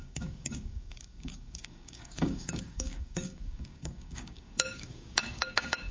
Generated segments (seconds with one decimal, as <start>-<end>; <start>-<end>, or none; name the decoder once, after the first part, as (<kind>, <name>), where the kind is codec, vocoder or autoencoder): 0.0-5.9 (codec, DAC)